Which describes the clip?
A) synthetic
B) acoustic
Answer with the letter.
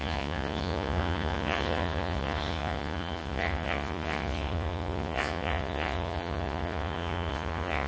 A